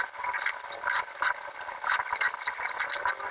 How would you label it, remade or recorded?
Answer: recorded